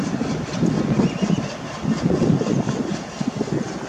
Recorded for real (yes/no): yes